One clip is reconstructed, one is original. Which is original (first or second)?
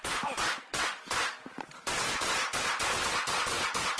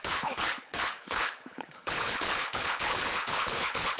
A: first